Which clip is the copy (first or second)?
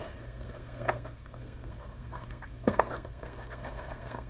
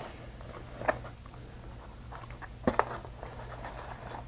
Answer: first